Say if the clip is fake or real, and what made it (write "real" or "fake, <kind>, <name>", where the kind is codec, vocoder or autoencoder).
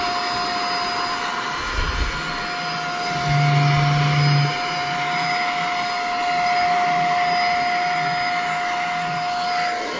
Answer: real